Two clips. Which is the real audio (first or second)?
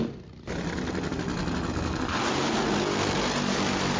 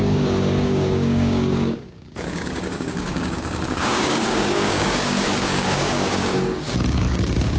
first